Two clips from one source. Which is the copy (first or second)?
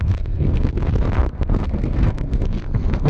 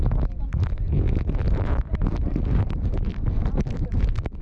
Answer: first